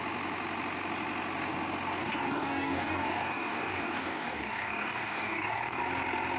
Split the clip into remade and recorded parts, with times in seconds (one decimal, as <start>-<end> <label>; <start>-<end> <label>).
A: 0.0-2.0 recorded; 2.0-5.8 remade; 5.8-6.4 recorded